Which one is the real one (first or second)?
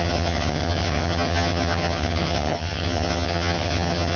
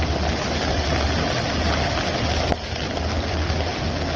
second